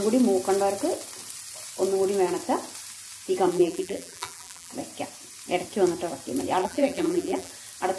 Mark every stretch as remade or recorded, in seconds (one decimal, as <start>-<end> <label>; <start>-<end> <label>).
0.0-3.5 recorded; 3.5-4.7 remade; 4.7-6.6 recorded; 6.6-7.5 remade; 7.5-8.0 recorded